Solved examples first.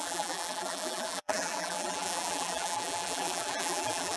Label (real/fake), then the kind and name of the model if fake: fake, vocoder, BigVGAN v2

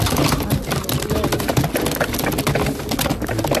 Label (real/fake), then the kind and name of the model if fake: real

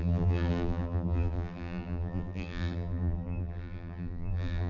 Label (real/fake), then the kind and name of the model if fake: fake, vocoder, BigVGAN v2